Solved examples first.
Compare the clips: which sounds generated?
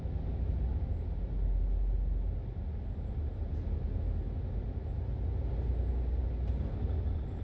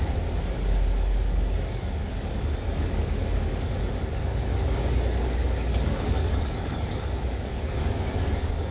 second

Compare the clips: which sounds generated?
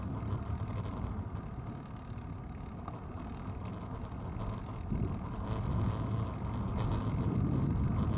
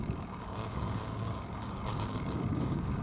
second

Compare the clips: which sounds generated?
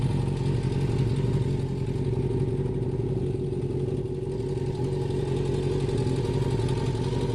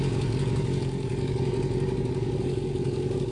second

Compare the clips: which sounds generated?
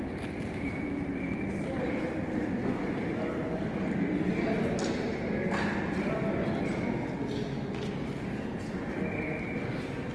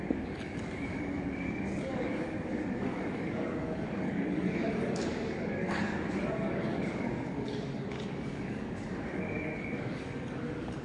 second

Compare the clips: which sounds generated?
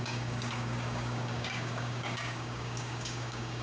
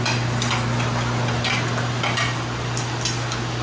first